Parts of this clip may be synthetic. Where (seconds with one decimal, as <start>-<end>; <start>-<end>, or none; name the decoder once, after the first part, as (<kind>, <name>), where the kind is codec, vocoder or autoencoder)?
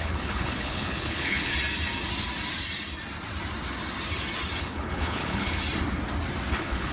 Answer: 0.0-1.5 (codec, HILCodec); 4.6-5.6; 6.5-6.9